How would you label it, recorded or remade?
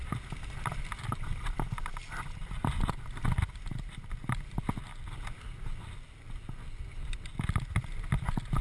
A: recorded